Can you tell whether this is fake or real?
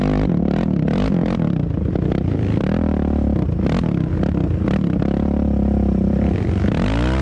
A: fake